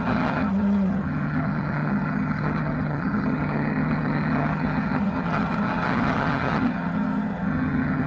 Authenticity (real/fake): fake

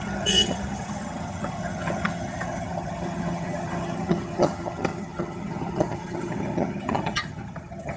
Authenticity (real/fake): fake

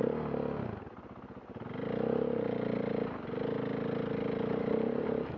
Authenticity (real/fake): real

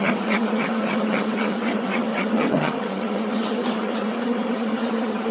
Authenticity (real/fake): fake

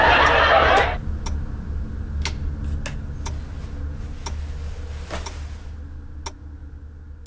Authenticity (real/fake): real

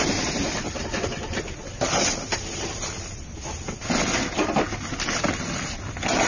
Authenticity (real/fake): real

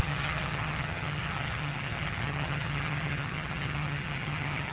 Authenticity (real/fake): fake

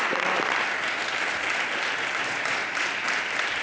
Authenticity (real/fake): real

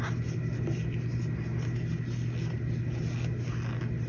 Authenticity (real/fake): real